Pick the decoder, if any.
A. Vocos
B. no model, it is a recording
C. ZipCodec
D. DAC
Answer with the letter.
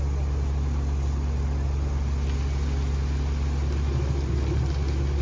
B